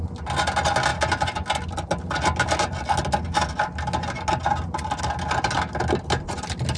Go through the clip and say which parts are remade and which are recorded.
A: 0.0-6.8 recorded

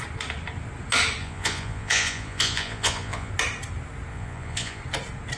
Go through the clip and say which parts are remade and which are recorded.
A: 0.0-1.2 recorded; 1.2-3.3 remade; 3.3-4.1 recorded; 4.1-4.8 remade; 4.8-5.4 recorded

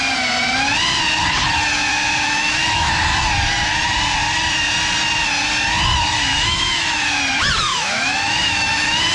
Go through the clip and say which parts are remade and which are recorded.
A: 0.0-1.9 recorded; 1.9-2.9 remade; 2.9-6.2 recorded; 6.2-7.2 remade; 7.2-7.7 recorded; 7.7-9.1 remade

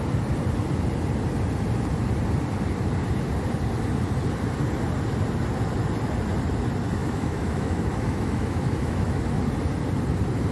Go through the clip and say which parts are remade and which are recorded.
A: 0.0-7.0 recorded; 7.0-9.4 remade; 9.4-10.5 recorded